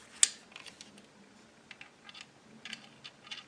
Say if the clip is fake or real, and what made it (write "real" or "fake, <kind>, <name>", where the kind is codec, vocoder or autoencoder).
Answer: real